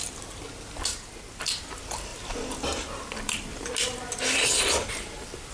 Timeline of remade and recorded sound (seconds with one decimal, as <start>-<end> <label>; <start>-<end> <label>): 0.0-2.1 recorded; 2.1-5.5 remade